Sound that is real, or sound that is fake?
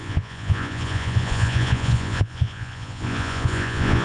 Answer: fake